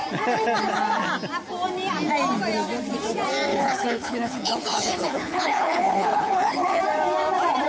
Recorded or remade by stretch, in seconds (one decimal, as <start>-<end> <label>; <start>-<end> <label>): 0.0-3.5 recorded; 3.5-6.8 remade; 6.8-7.7 recorded